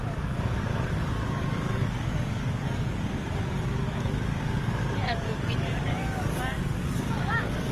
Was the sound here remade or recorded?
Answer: remade